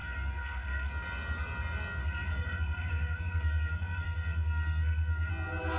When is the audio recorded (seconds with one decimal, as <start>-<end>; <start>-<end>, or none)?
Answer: 0.9-2.0; 5.3-5.8